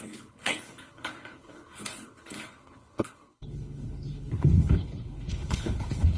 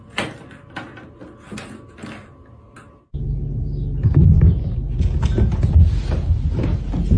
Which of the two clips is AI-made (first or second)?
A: first